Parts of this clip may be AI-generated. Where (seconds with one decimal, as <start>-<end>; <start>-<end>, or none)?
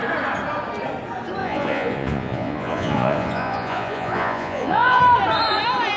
1.4-5.0